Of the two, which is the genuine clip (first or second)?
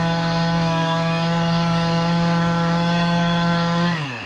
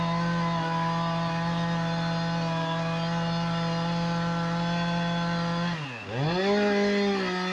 second